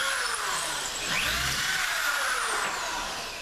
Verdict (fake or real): fake